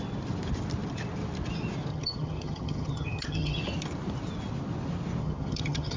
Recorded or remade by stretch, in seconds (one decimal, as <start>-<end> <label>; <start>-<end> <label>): 0.0-1.9 recorded; 1.9-3.6 remade; 3.6-5.2 recorded; 5.2-6.0 remade